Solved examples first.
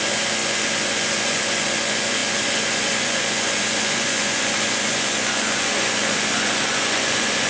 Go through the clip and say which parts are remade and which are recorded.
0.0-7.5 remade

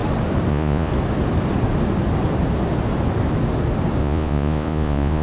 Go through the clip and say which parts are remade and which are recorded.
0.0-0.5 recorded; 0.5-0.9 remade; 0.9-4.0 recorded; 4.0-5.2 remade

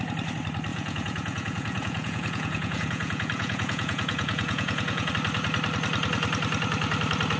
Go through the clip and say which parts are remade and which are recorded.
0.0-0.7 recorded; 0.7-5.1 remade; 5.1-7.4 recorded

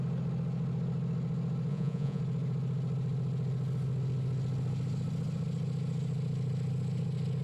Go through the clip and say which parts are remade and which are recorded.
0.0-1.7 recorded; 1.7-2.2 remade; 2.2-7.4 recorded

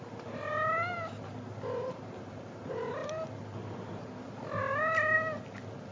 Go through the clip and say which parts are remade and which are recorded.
0.0-5.9 recorded

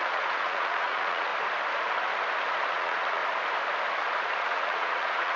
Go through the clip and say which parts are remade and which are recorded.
0.0-1.3 remade; 1.3-2.7 recorded; 2.7-3.2 remade; 3.2-4.4 recorded; 4.4-5.4 remade

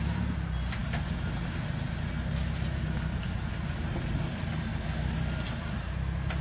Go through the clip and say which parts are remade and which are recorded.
0.0-6.4 recorded

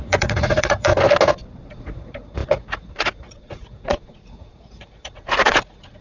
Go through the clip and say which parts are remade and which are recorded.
0.0-0.9 remade; 0.9-1.7 recorded; 1.7-6.0 remade